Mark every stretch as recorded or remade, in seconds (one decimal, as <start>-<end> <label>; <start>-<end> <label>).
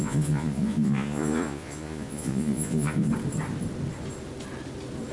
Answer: 0.0-3.1 remade; 3.1-5.1 recorded